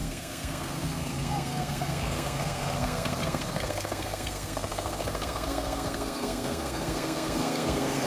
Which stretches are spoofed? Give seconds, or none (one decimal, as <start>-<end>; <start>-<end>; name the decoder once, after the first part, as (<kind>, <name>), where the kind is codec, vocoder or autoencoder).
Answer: 0.0-8.1 (codec, SNAC)